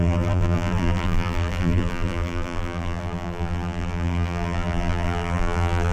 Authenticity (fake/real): fake